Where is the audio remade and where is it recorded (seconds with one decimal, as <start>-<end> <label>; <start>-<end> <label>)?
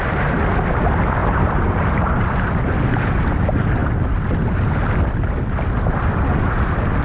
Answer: 0.0-1.2 recorded; 1.2-3.4 remade; 3.4-7.0 recorded